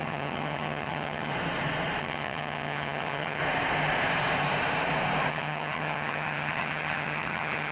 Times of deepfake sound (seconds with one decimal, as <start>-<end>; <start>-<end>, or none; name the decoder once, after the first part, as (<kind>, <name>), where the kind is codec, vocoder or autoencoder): 0.0-1.3 (vocoder, HiFi-GAN); 2.0-3.4; 5.3-7.7